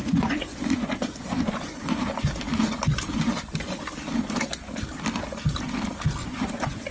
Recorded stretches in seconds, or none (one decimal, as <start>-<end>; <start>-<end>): 2.1-6.2